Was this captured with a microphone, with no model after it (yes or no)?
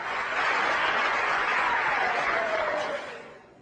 no